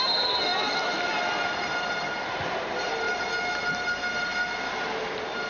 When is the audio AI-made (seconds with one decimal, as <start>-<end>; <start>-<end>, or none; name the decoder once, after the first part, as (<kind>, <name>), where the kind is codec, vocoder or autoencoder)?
none